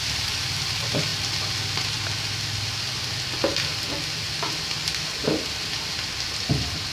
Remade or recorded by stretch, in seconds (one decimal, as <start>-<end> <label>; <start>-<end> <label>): 0.0-6.9 recorded